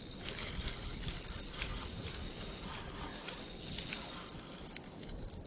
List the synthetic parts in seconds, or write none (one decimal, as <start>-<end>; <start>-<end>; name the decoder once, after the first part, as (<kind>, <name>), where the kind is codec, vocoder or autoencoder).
none